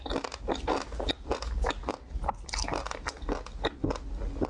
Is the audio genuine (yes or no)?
yes